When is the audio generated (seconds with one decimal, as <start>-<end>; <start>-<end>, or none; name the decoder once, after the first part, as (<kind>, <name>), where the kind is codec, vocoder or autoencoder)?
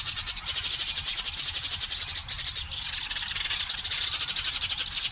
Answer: 0.0-5.1 (vocoder, BigVGAN v2)